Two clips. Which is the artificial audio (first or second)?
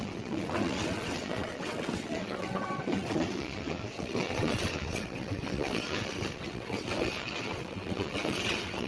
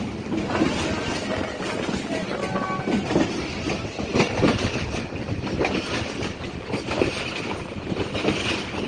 first